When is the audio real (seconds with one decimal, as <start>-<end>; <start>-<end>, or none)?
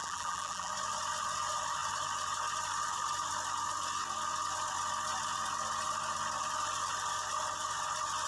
0.7-8.3